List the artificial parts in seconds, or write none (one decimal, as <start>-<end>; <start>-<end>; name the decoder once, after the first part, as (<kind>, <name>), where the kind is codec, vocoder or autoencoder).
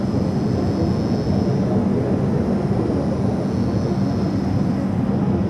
none